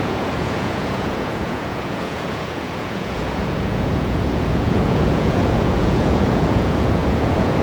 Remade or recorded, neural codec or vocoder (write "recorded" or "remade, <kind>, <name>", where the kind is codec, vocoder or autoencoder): remade, vocoder, Vocos